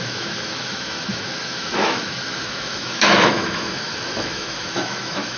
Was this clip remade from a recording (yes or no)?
yes